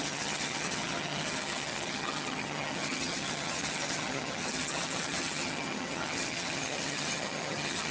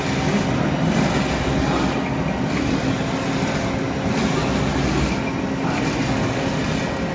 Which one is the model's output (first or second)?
first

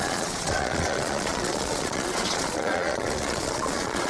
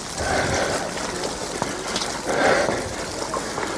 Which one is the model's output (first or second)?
first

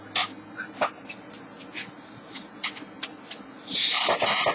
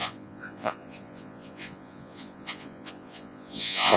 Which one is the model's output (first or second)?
second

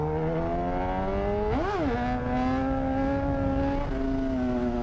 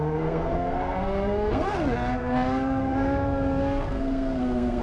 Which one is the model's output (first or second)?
second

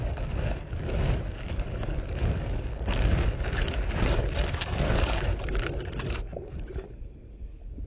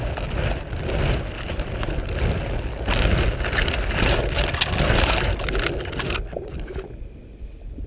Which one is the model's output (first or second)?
first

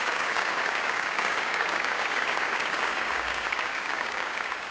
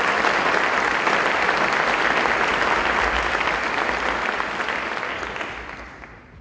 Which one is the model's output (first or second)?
first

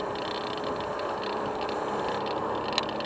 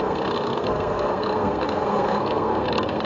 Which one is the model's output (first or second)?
second